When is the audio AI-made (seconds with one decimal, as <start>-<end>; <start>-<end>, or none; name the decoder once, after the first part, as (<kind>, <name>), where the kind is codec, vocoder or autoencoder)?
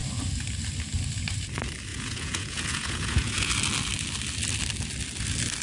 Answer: 1.9-3.5 (vocoder, Vocos)